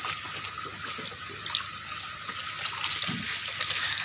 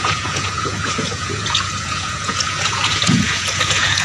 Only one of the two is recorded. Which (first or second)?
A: first